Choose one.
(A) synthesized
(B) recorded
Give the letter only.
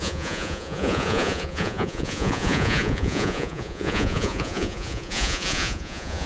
A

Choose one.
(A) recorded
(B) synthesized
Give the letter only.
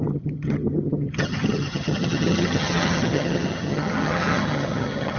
B